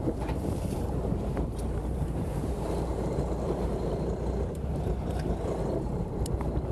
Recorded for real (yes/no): no